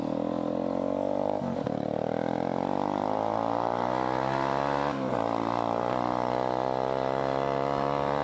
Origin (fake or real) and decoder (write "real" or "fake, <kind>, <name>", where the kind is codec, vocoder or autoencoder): real